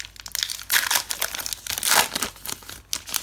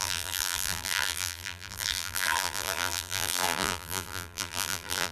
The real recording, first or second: first